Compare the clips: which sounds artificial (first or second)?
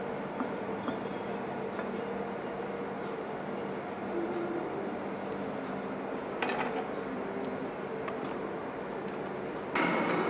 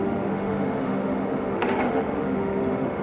second